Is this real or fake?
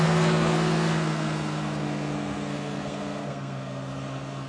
fake